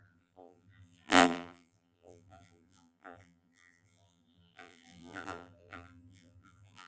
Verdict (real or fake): fake